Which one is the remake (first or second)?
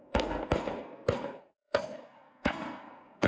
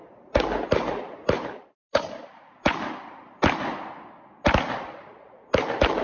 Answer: first